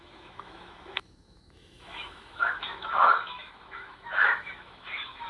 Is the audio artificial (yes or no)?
yes